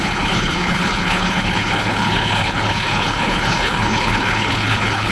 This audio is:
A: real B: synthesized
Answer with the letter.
B